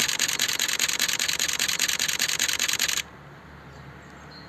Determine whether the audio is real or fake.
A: real